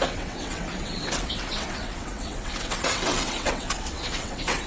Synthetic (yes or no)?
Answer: yes